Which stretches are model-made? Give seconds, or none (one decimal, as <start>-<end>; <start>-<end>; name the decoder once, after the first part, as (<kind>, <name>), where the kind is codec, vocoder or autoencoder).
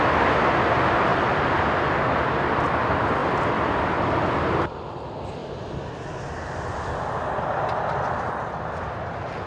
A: none